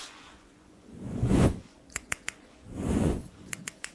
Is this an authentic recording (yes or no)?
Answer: no